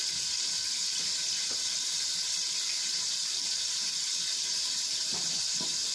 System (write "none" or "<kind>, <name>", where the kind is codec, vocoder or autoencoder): vocoder, BigVGAN v2